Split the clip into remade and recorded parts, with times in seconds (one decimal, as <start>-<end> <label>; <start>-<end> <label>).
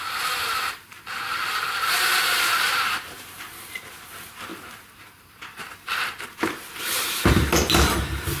0.0-7.5 remade; 7.5-8.4 recorded